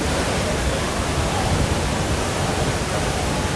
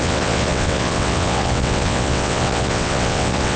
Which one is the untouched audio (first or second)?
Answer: first